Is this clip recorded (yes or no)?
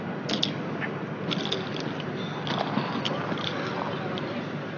yes